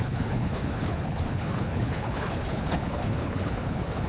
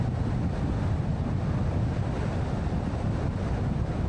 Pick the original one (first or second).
second